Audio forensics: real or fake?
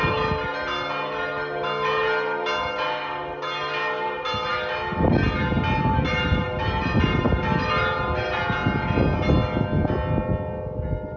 real